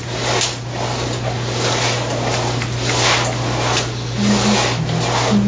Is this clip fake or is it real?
real